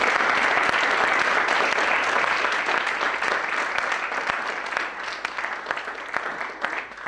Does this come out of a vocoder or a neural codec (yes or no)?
no